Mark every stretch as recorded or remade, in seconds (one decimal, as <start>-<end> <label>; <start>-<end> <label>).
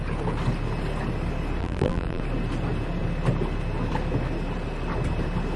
0.0-1.6 recorded; 1.6-2.2 remade; 2.2-5.6 recorded